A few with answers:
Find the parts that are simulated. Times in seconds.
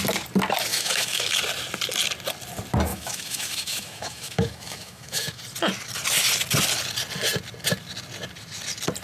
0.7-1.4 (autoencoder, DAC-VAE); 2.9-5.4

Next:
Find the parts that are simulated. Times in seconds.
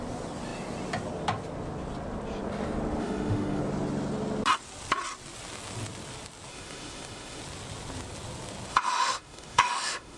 3.0-3.6 (autoencoder, DAC-VAE); 6.5-7.4; 8.7-10.2